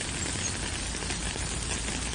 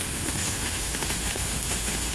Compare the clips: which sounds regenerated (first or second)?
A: second